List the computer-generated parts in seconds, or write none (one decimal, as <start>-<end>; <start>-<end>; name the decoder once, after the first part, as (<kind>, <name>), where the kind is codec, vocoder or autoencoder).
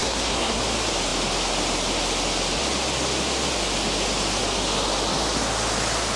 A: 0.0-0.6 (codec, SNAC)